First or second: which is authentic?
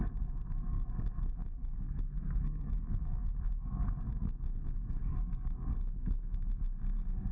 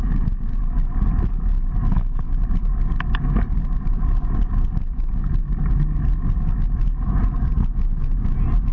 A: second